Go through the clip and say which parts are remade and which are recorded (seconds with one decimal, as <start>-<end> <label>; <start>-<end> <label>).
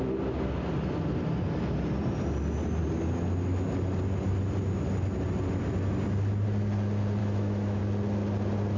0.0-7.2 recorded; 7.2-7.8 remade; 7.8-8.8 recorded